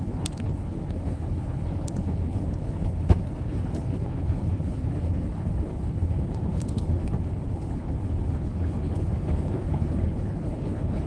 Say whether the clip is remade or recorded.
remade